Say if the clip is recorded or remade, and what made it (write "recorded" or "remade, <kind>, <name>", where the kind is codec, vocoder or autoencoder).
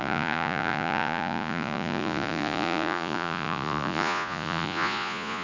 remade, vocoder, Vocos